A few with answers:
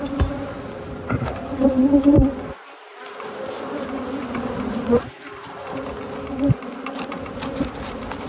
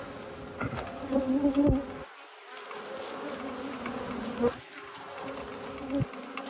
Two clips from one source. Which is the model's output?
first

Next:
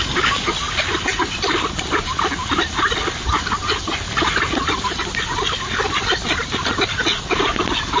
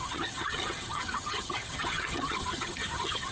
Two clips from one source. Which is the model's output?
second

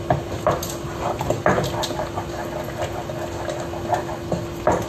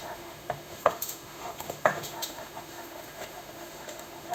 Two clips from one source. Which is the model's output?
second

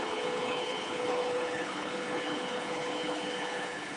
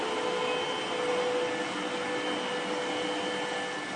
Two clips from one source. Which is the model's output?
first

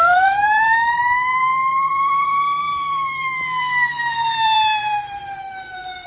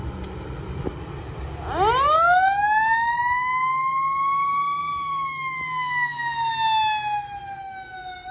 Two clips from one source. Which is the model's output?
first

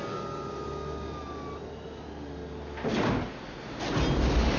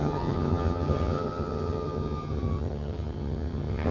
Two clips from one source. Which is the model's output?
second